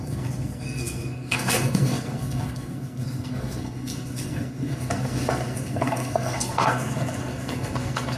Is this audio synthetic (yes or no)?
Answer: yes